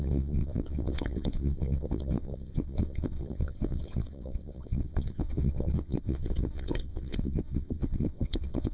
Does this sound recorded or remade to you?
remade